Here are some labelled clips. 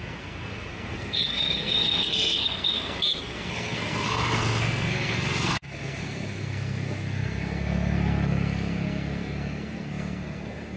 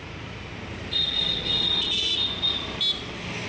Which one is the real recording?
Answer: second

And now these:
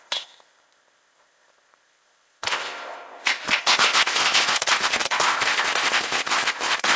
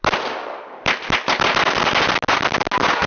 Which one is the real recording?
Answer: second